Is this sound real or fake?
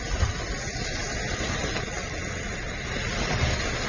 real